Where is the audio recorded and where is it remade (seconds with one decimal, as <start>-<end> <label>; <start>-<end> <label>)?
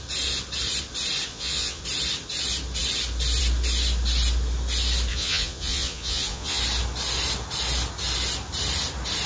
0.0-1.3 recorded; 1.3-1.8 remade; 1.8-5.1 recorded; 5.1-6.6 remade; 6.6-9.3 recorded